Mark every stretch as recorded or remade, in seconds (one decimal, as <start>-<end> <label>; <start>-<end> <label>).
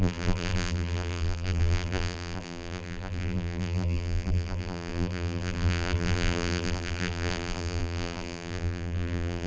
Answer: 0.0-9.5 remade